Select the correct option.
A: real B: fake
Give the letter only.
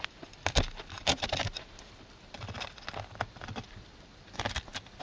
A